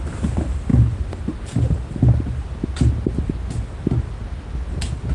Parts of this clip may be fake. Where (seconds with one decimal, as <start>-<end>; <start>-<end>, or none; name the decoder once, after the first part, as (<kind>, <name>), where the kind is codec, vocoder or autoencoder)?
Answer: none